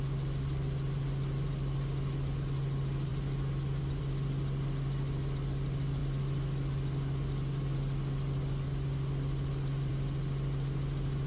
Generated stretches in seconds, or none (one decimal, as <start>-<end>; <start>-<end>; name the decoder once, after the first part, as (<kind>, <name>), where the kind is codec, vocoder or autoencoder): none